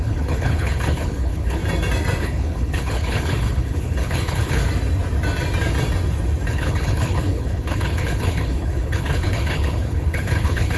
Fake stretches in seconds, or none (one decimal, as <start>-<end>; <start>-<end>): 0.0-1.6; 2.2-4.6; 6.5-10.8